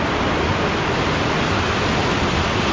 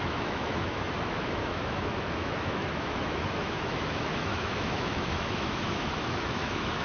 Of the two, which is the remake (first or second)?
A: second